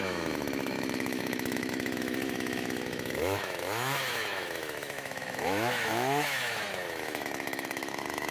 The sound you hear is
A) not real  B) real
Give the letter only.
A